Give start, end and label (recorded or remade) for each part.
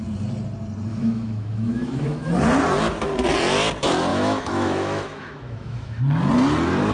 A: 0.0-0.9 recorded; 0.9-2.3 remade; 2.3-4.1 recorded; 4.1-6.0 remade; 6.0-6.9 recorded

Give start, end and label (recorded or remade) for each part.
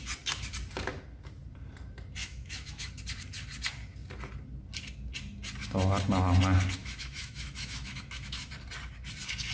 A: 0.0-2.2 recorded; 2.2-2.9 remade; 2.9-6.8 recorded; 6.8-8.5 remade; 8.5-9.5 recorded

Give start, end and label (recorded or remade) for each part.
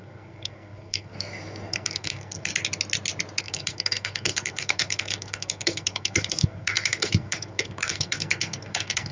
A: 0.0-2.5 remade; 2.5-3.4 recorded; 3.4-9.1 remade